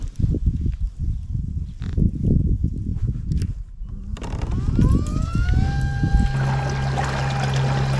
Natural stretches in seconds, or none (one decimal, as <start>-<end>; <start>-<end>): 0.0-5.1; 6.1-8.0